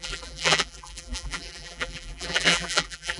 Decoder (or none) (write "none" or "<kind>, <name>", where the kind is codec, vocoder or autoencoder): vocoder, BigVGAN v2